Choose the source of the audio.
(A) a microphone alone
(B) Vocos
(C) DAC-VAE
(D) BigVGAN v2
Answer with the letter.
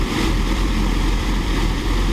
D